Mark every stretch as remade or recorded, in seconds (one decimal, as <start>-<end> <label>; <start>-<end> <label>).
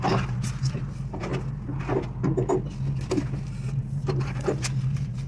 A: 0.0-1.3 remade; 1.3-3.9 recorded; 3.9-5.3 remade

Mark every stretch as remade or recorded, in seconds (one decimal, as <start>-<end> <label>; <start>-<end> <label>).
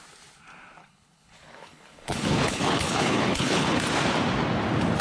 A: 0.0-0.8 recorded; 0.8-3.8 remade; 3.8-5.0 recorded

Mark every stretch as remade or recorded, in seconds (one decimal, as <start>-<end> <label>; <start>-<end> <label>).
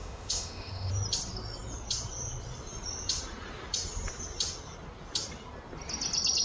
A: 0.0-0.9 remade; 0.9-6.4 recorded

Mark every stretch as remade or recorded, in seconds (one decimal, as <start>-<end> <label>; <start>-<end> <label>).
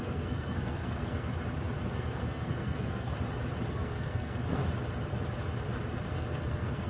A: 0.0-1.3 remade; 1.3-1.9 recorded; 1.9-3.1 remade; 3.1-3.7 recorded; 3.7-4.6 remade; 4.6-6.1 recorded; 6.1-6.9 remade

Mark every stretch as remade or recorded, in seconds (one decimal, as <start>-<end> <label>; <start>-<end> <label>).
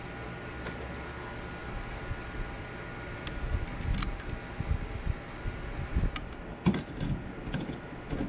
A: 0.0-8.3 recorded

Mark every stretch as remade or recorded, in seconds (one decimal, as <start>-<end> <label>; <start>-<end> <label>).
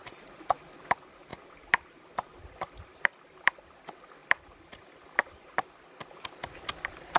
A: 0.0-7.2 recorded